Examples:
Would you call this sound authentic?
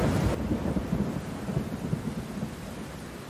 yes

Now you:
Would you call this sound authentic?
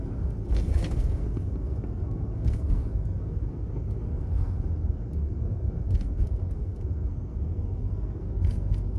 no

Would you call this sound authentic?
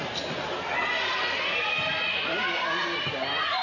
yes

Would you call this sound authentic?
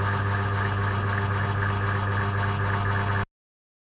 yes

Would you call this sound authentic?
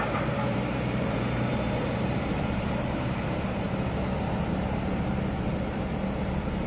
no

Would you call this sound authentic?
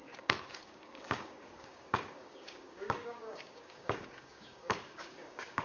no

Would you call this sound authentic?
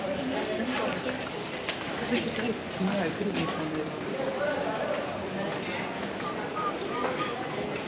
yes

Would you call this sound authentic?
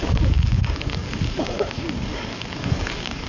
no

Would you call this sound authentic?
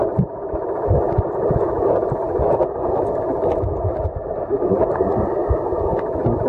yes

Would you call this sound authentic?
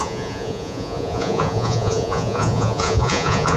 no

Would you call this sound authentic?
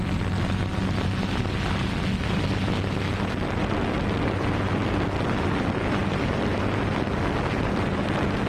yes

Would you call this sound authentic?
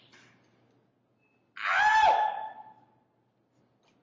yes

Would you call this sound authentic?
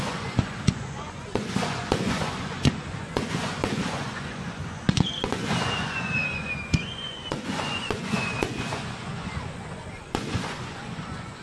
no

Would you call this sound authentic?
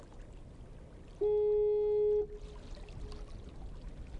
yes